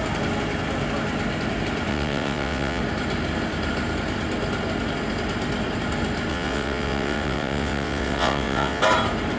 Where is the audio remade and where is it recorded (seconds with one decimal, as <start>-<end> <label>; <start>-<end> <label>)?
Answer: 0.0-1.9 recorded; 1.9-2.8 remade; 2.8-6.3 recorded; 6.3-8.8 remade; 8.8-9.4 recorded